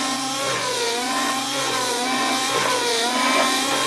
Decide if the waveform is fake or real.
fake